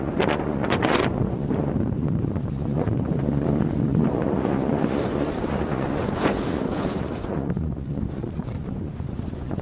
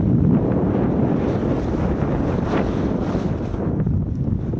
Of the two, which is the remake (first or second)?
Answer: first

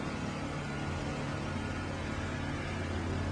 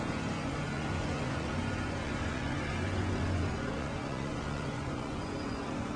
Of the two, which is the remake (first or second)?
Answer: second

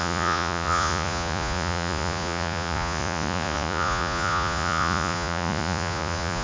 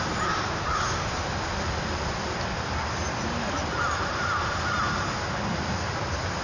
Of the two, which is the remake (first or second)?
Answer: first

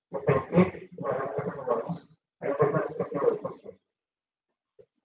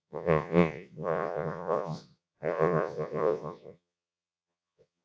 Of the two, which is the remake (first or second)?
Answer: second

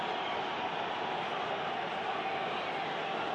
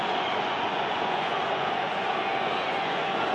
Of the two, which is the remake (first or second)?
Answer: second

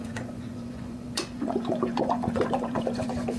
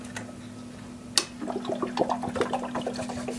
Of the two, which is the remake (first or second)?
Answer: first